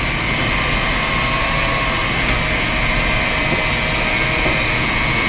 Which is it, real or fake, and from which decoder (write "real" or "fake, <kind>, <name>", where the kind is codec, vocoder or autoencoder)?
real